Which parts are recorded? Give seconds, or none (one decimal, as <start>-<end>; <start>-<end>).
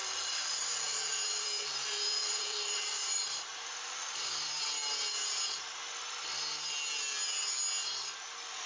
4.3-8.7